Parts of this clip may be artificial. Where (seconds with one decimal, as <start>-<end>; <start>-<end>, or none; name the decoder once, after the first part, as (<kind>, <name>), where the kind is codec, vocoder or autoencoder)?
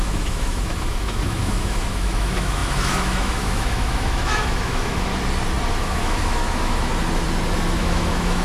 0.0-5.1 (autoencoder, DAC-VAE); 5.7-6.9; 7.8-8.4